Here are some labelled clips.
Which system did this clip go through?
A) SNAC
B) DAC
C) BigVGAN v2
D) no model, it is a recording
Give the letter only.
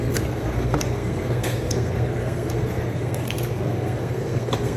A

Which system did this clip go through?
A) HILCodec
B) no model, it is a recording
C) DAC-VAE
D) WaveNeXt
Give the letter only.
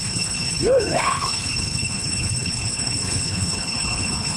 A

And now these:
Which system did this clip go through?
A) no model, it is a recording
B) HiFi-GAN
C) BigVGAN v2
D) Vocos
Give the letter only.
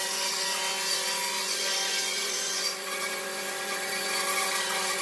D